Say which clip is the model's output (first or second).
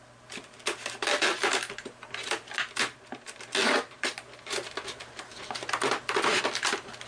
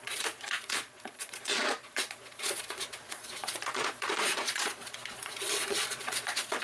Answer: second